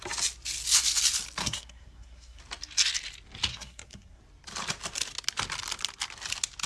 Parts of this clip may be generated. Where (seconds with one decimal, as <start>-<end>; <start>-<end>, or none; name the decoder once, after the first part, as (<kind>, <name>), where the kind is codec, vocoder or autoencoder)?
1.4-2.4 (codec, SNAC); 3.5-4.2